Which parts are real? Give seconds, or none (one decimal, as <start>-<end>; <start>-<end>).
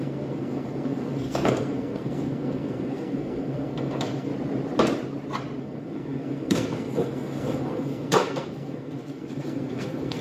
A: 4.3-5.6